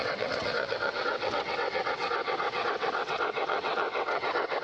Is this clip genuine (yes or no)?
no